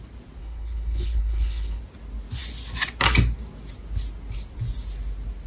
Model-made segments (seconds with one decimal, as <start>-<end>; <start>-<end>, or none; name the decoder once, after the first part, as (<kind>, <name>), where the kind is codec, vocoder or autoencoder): 0.4-1.8 (codec, HILCodec)